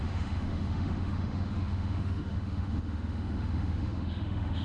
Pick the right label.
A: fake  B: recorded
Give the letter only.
A